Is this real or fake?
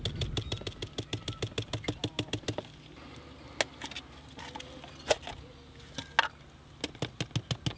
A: real